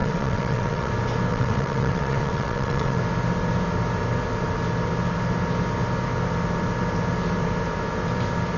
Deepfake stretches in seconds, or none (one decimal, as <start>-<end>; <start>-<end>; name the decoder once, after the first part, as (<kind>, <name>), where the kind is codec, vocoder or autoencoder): 0.0-0.9 (vocoder, WaveNeXt); 1.3-3.0